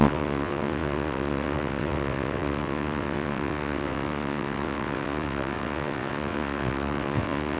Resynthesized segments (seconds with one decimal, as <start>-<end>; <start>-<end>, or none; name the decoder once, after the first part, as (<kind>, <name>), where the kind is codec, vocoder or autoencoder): 0.0-7.6 (vocoder, WaveNeXt)